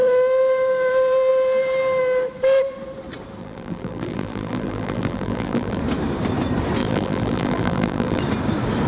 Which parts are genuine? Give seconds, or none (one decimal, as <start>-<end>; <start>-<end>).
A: 0.0-3.4; 5.8-6.8; 8.2-8.9